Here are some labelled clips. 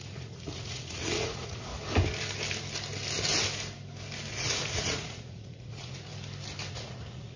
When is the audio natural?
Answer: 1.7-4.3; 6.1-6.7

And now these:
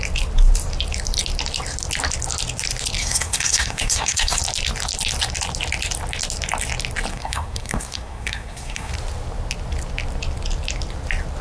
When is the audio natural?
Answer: 0.0-3.0; 4.4-7.1; 8.9-11.4

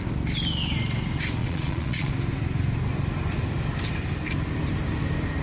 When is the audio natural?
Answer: 0.0-1.4; 2.1-5.4

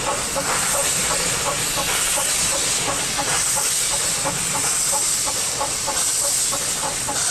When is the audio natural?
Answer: 0.0-7.3